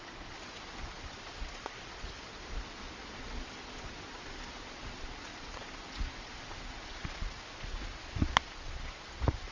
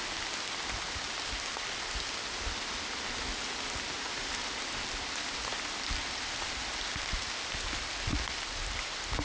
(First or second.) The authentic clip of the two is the second